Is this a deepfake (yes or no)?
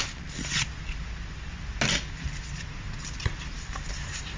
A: no